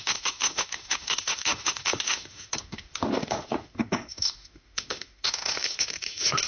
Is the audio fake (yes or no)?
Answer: yes